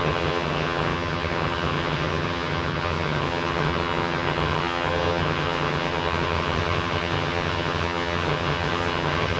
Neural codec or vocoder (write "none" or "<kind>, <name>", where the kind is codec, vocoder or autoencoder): vocoder, HiFi-GAN